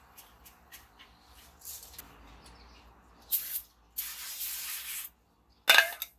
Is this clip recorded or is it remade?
recorded